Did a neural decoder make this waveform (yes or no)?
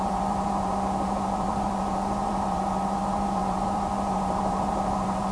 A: yes